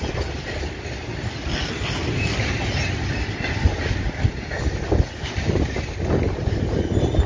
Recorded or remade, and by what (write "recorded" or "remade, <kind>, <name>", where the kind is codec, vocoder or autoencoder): recorded